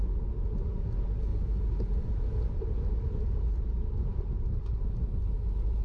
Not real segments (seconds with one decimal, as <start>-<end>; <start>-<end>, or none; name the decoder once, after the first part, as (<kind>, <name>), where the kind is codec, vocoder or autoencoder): none